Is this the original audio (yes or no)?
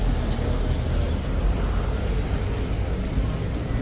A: yes